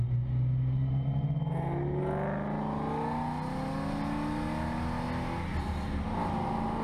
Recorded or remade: recorded